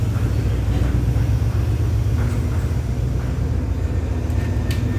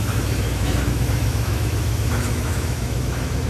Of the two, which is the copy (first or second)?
second